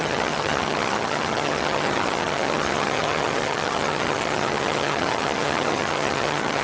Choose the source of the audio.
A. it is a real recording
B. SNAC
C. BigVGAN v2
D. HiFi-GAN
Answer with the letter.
D